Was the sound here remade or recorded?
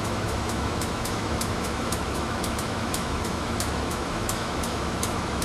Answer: remade